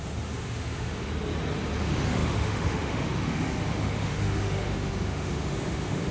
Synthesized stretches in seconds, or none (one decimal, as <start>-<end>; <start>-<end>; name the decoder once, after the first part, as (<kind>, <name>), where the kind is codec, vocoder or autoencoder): 0.0-1.1 (autoencoder, DAC-VAE); 1.8-6.1